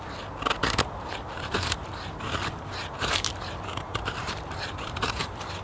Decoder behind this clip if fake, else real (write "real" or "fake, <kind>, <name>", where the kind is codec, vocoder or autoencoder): fake, vocoder, BigVGAN v2